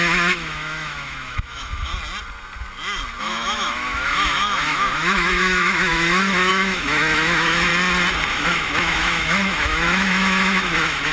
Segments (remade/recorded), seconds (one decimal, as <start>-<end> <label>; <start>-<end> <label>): 0.0-1.9 remade; 1.9-3.2 recorded; 3.2-7.7 remade; 7.7-8.3 recorded; 8.3-11.1 remade